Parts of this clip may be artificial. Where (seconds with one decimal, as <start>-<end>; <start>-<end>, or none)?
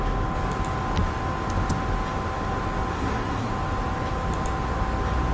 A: 2.9-3.5